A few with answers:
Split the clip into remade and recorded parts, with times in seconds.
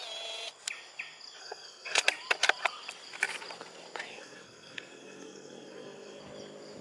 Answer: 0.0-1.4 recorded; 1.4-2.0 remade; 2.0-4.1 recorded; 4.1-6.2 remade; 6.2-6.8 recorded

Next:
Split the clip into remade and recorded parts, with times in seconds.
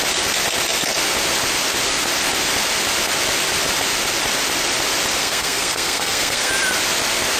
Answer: 0.0-5.2 recorded; 5.2-6.5 remade; 6.5-7.4 recorded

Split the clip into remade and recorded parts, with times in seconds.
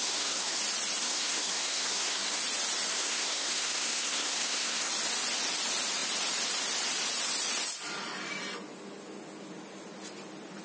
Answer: 0.0-0.6 remade; 0.6-1.0 recorded; 1.0-2.4 remade; 2.4-2.9 recorded; 2.9-4.9 remade; 4.9-10.6 recorded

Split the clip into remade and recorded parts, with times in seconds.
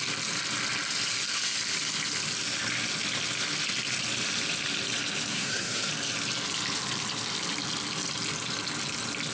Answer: 0.0-5.3 recorded; 5.3-5.9 remade; 5.9-9.3 recorded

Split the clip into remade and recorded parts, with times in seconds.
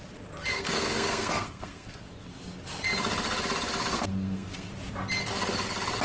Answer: 0.0-0.5 recorded; 0.5-2.0 remade; 2.0-3.9 recorded; 3.9-4.7 remade; 4.7-6.0 recorded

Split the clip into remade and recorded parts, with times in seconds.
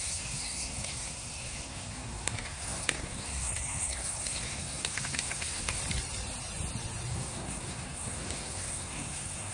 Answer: 0.0-5.8 remade; 5.8-7.1 recorded; 7.1-9.5 remade